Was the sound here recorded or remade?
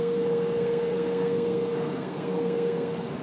remade